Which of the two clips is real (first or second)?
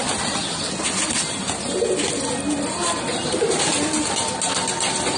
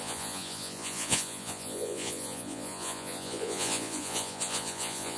first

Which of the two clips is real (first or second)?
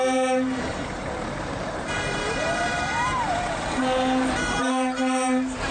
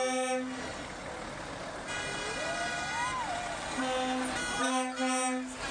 second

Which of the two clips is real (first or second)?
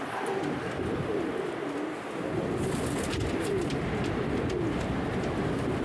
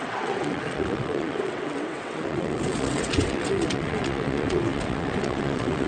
first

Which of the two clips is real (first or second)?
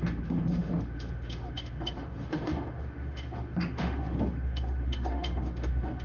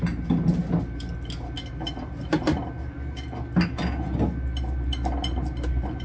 second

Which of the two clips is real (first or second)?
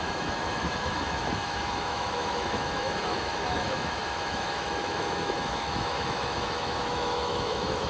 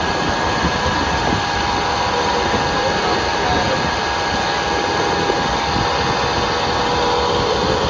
second